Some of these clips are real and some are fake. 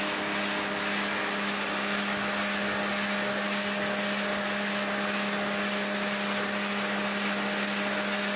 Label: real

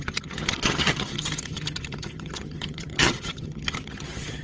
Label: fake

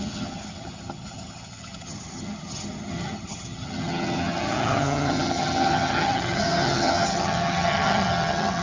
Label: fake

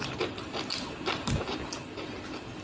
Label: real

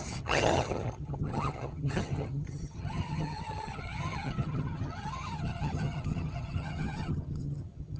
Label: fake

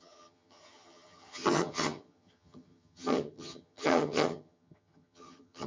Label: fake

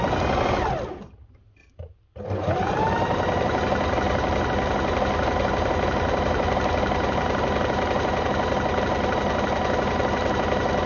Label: real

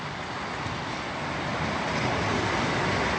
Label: real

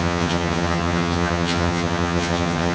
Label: fake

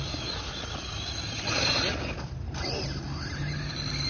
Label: real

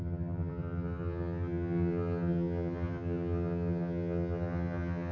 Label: fake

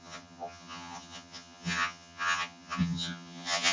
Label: fake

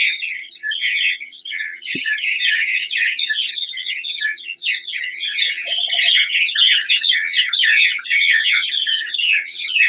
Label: fake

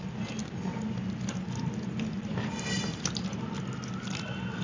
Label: real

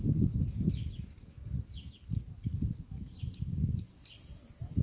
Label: real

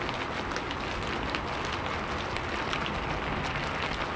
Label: real